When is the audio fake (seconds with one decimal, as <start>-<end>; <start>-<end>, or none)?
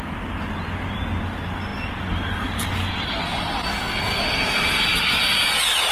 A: none